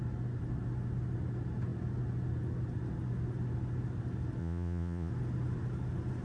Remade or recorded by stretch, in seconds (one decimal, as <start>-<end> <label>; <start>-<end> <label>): 0.0-4.4 recorded; 4.4-5.1 remade; 5.1-6.2 recorded

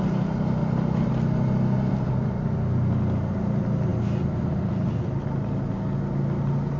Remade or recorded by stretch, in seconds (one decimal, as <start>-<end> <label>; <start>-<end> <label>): 0.0-6.8 recorded

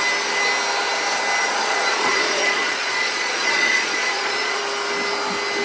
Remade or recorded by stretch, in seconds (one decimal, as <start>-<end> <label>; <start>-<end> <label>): 0.0-1.4 recorded; 1.4-4.6 remade; 4.6-5.6 recorded

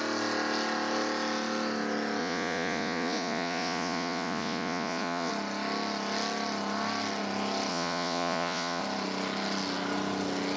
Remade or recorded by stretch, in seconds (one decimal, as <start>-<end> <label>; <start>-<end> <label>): 0.0-2.2 recorded; 2.2-5.3 remade; 5.3-7.7 recorded; 7.7-8.8 remade; 8.8-10.6 recorded

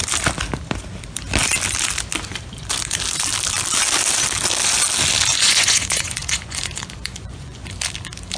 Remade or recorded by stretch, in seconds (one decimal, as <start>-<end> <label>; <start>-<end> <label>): 0.0-5.3 recorded; 5.3-7.7 remade; 7.7-8.4 recorded

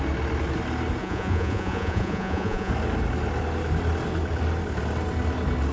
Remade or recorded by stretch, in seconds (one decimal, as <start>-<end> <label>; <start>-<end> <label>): 0.0-1.0 recorded; 1.0-2.7 remade; 2.7-5.7 recorded